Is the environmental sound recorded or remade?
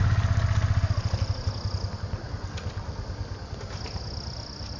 recorded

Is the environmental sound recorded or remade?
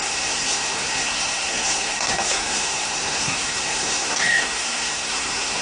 remade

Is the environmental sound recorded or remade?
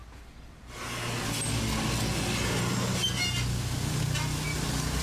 recorded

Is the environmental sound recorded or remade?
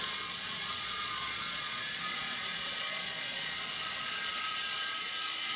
remade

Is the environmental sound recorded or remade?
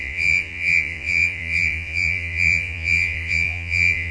remade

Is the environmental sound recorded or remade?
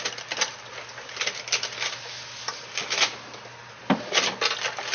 recorded